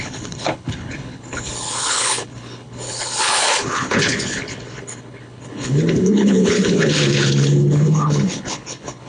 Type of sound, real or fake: fake